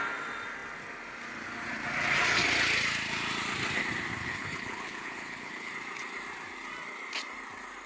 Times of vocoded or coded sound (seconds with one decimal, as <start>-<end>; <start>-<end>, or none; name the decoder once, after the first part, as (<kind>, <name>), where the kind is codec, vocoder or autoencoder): 4.2-5.7 (codec, HILCodec)